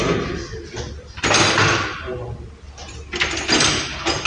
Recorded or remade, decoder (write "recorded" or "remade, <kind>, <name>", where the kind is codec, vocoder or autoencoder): recorded